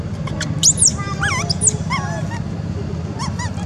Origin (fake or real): real